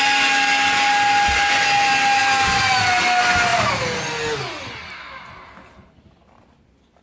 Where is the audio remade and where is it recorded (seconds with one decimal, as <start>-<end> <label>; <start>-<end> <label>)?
0.0-7.0 recorded